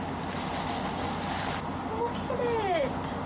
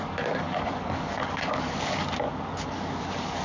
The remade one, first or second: second